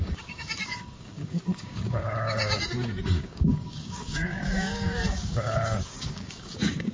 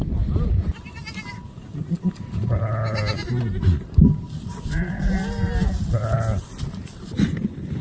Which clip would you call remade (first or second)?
first